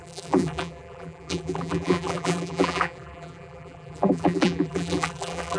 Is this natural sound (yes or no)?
no